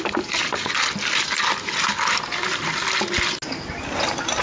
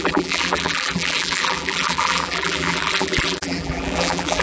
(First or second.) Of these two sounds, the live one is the first